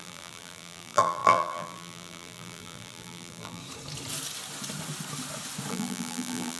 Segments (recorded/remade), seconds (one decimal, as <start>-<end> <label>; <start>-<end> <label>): 0.0-3.6 remade; 3.6-5.7 recorded; 5.7-6.6 remade